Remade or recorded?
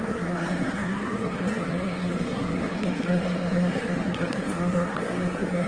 remade